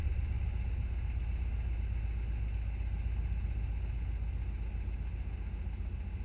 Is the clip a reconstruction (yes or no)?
no